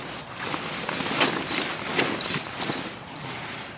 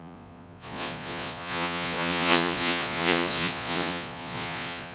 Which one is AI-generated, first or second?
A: second